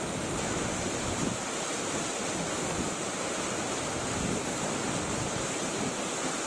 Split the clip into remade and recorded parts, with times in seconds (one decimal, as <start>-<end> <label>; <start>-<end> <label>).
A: 0.0-6.5 recorded